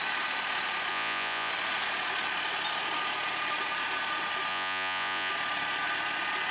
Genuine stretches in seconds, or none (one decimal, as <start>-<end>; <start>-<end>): 0.0-0.9; 1.5-4.5; 5.3-6.5

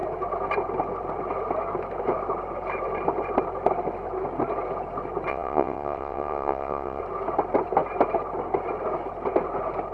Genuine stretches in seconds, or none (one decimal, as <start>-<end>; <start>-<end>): 0.0-5.3; 7.0-9.9